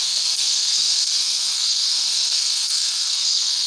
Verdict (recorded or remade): remade